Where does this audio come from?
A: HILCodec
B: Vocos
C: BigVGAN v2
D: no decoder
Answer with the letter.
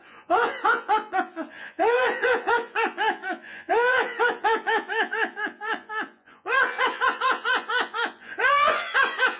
B